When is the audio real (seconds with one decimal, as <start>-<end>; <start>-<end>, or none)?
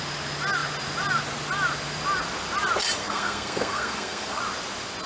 0.0-3.0; 4.4-5.1